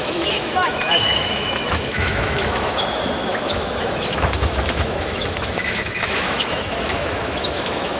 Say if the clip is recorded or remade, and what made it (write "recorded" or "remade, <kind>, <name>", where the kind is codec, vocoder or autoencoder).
remade, autoencoder, DAC-VAE